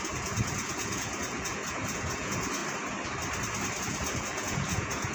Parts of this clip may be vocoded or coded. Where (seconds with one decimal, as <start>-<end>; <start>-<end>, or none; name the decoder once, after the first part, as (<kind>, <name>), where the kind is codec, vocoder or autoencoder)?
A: 0.0-2.6 (vocoder, Vocos); 3.8-5.1